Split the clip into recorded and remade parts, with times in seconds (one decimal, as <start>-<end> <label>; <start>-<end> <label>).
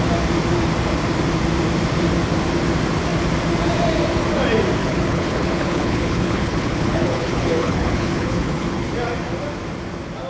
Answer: 0.0-4.8 recorded; 4.8-8.9 remade; 8.9-10.3 recorded